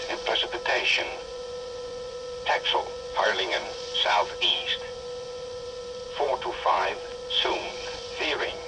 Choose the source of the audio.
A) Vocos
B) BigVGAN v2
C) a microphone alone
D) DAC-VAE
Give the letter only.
A